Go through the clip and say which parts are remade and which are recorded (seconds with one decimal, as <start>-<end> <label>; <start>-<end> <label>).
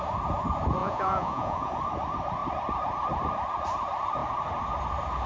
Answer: 0.0-0.8 recorded; 0.8-1.7 remade; 1.7-5.3 recorded